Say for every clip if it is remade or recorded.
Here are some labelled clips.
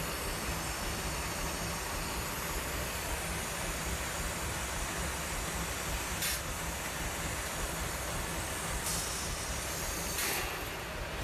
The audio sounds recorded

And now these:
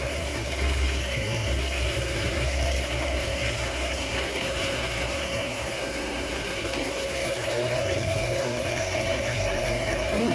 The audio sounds remade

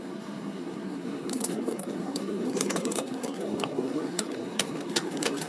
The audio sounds remade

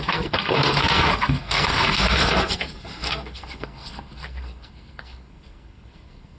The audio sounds remade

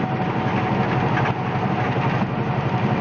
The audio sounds recorded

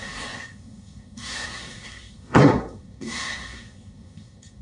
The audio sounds remade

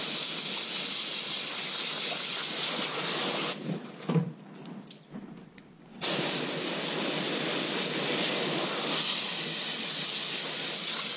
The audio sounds recorded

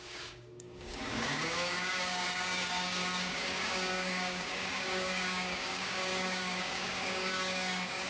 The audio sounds remade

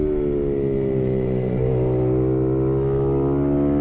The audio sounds recorded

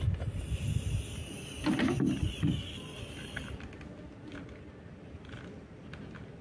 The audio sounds recorded